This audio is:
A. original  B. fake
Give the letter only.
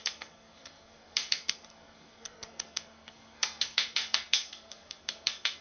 B